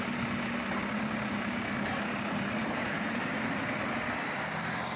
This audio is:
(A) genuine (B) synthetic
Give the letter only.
A